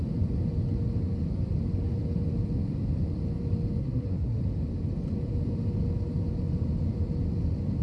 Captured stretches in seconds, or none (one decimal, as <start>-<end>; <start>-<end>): 0.0-3.8; 4.4-7.8